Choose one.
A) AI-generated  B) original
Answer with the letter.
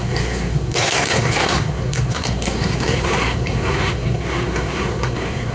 A